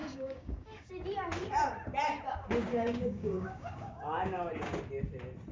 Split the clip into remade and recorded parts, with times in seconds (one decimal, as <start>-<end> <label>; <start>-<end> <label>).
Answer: 0.0-0.9 remade; 0.9-2.7 recorded; 2.7-4.5 remade; 4.5-5.5 recorded